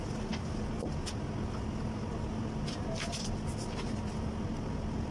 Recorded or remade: recorded